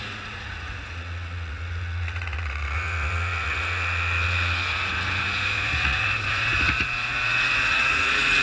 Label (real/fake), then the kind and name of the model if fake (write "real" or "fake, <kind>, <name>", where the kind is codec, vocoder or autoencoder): fake, vocoder, Vocos